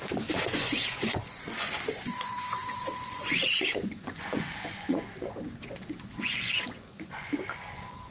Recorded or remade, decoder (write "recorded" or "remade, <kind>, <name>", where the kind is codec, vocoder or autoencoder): remade, vocoder, Vocos